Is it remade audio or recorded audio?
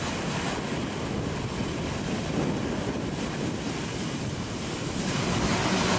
recorded